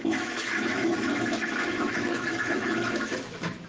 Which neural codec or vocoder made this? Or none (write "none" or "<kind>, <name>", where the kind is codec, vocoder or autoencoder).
autoencoder, DAC-VAE